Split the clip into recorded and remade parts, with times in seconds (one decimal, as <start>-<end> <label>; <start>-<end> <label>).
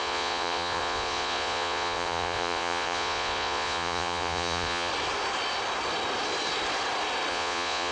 0.0-4.9 remade; 4.9-7.3 recorded; 7.3-7.9 remade